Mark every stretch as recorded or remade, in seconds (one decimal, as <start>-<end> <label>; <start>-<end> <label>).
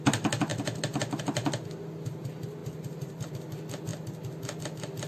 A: 0.0-2.6 recorded; 2.6-3.3 remade; 3.3-5.1 recorded